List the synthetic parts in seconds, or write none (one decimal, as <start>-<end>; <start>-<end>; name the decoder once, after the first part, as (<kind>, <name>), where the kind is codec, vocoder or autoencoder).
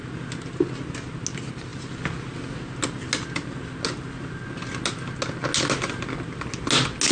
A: none